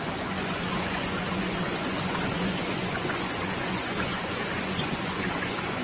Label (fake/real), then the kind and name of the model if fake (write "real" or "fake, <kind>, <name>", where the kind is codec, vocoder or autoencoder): fake, vocoder, Vocos